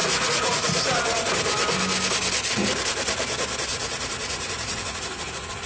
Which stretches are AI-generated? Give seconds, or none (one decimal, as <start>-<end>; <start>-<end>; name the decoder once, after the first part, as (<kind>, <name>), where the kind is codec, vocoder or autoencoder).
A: 0.0-1.3 (vocoder, Vocos); 3.7-5.7